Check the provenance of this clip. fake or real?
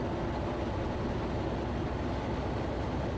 real